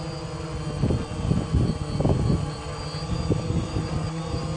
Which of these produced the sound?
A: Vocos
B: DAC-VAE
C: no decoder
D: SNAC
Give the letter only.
C